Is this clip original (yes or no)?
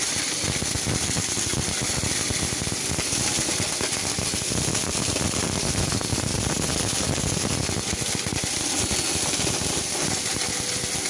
yes